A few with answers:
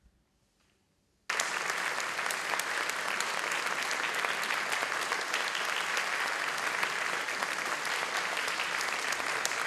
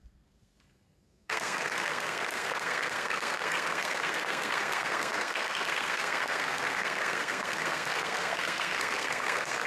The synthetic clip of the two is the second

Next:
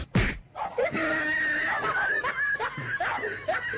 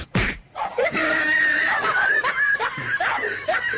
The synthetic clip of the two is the second